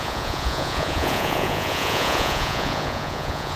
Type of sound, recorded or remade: remade